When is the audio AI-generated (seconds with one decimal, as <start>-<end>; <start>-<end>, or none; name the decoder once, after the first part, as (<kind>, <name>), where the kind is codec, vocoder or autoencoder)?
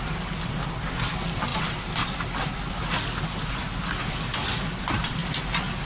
none